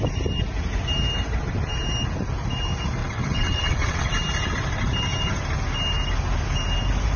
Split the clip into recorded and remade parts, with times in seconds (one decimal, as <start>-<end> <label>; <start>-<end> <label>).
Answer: 0.0-3.0 recorded; 3.0-4.1 remade; 4.1-7.2 recorded